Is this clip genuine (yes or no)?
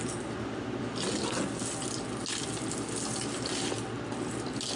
yes